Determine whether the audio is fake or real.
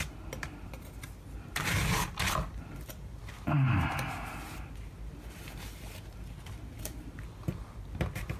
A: real